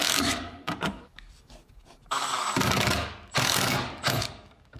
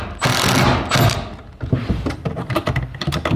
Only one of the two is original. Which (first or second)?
second